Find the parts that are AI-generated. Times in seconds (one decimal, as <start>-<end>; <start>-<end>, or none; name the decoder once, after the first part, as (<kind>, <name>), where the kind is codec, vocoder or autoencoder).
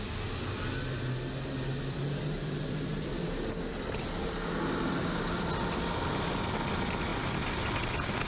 none